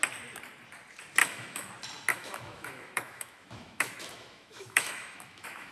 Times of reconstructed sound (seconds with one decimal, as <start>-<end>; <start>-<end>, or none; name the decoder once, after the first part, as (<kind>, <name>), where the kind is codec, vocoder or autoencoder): 1.2-1.7 (autoencoder, DAC-VAE); 2.1-5.7